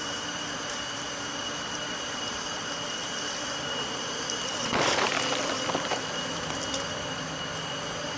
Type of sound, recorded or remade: recorded